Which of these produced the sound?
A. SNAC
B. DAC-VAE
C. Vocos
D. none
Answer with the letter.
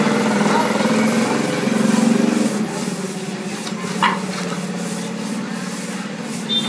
D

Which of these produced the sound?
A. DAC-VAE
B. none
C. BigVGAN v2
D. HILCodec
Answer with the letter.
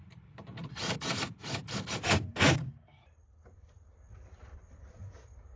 C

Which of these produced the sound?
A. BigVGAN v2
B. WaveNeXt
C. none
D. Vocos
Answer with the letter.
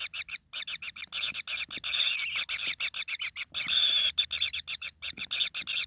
C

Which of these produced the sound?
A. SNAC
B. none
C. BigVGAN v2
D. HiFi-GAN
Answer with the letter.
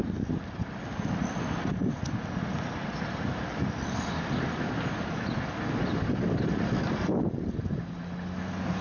B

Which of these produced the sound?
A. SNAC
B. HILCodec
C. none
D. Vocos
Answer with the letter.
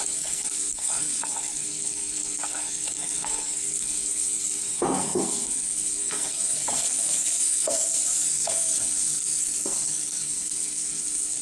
A